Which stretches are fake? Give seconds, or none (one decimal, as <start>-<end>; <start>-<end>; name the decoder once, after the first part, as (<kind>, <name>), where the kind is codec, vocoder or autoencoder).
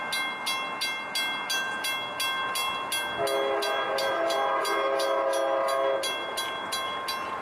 none